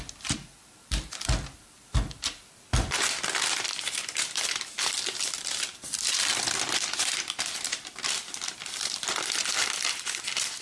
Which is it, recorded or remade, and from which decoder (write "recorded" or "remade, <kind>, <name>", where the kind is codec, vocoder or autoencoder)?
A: remade, vocoder, BigVGAN v2